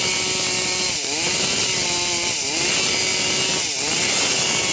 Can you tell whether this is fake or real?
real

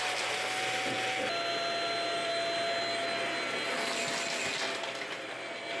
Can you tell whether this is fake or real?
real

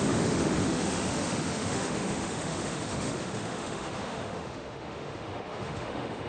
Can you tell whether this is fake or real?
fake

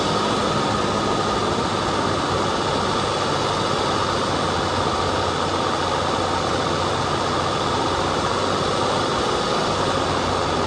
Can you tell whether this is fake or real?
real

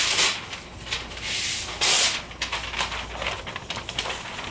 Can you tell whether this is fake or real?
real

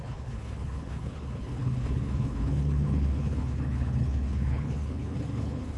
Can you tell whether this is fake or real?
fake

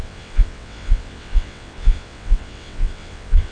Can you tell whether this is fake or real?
fake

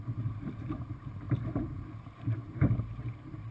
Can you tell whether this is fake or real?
fake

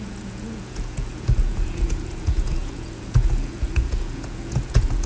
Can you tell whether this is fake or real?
fake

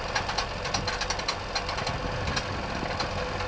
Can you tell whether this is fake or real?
real